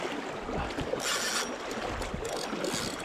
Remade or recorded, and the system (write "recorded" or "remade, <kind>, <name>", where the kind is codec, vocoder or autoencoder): recorded